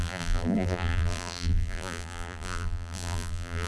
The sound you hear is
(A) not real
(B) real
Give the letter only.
A